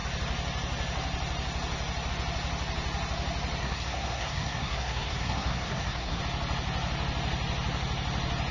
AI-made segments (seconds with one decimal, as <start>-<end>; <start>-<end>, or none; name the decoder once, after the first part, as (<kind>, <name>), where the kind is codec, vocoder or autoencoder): 3.6-6.2 (codec, SNAC)